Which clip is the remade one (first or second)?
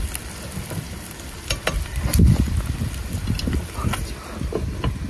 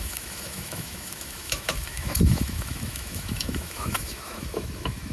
second